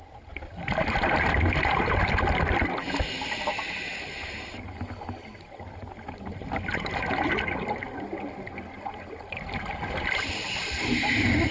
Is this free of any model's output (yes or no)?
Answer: yes